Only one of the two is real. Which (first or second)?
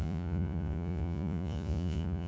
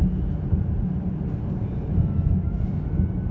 second